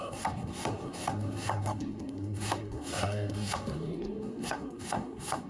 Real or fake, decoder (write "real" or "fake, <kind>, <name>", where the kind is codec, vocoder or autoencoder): fake, codec, SNAC